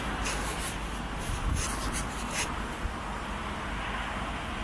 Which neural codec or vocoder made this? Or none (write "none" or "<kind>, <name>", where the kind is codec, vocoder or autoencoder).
none